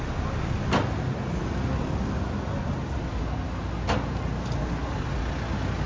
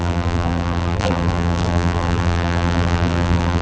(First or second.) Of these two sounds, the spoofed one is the second